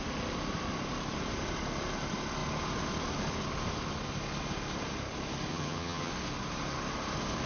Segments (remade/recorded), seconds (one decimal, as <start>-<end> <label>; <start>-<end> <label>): 0.0-5.5 recorded; 5.5-6.1 remade; 6.1-7.5 recorded